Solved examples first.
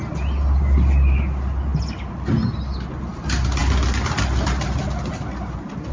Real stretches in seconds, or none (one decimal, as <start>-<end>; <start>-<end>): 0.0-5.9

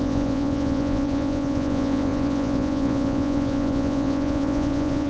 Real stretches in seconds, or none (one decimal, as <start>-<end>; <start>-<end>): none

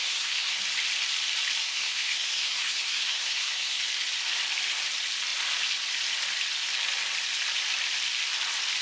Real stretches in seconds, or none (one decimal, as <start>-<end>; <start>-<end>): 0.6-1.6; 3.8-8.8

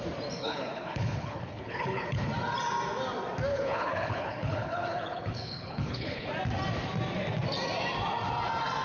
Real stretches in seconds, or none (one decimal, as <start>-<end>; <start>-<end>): 0.0-0.4; 2.3-3.5; 6.3-8.8